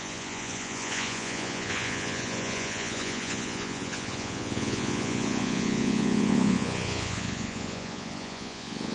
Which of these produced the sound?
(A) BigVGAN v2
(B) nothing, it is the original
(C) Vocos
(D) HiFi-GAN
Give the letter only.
C